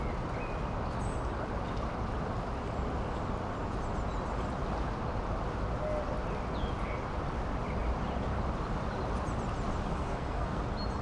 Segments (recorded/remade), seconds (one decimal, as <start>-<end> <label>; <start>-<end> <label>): 0.0-9.9 recorded; 9.9-10.6 remade; 10.6-11.0 recorded